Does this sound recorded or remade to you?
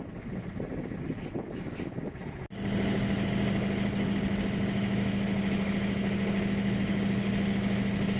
recorded